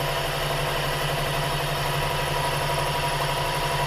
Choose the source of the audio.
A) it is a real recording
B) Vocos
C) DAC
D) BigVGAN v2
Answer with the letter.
A